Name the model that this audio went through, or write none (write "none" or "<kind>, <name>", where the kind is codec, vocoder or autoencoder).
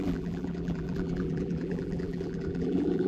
vocoder, BigVGAN v2